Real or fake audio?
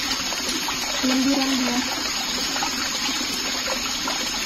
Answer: real